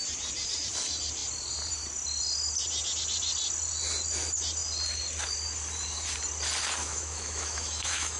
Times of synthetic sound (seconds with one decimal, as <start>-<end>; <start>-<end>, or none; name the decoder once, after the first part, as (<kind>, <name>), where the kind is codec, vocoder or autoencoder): 6.8-8.2 (autoencoder, DAC-VAE)